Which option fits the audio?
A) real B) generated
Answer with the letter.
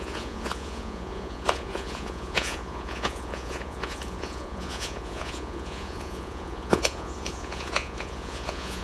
B